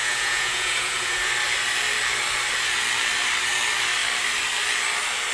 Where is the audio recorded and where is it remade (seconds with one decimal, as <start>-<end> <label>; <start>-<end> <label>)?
0.0-1.3 remade; 1.3-5.3 recorded